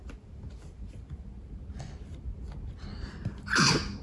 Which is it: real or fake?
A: real